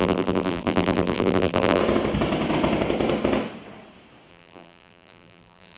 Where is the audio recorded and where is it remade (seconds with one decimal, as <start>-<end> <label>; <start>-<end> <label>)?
0.0-1.8 remade; 1.8-4.3 recorded; 4.3-5.8 remade